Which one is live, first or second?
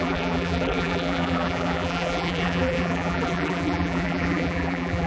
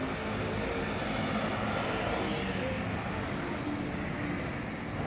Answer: second